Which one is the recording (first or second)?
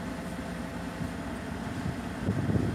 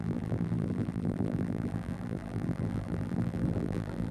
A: first